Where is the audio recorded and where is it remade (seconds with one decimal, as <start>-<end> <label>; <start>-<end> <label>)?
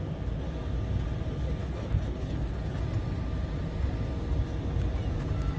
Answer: 0.0-1.6 recorded; 1.6-2.8 remade; 2.8-5.6 recorded